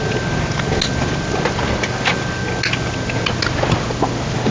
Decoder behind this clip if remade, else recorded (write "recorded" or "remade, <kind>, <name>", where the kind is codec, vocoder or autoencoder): recorded